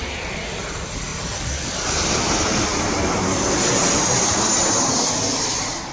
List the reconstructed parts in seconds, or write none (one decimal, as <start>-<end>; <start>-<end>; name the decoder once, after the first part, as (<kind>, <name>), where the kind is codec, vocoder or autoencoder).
none